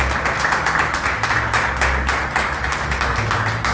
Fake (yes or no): no